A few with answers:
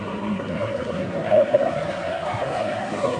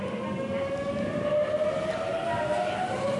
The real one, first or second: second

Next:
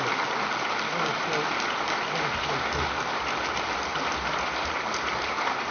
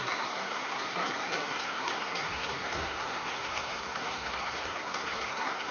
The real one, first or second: first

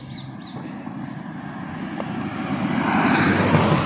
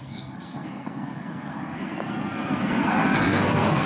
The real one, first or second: first